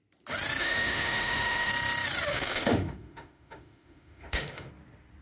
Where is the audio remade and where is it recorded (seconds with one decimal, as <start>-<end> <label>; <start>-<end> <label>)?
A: 0.0-0.6 recorded; 0.6-1.7 remade; 1.7-2.3 recorded; 2.3-4.7 remade; 4.7-5.2 recorded